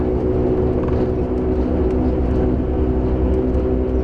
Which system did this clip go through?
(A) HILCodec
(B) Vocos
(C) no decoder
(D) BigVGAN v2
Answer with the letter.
C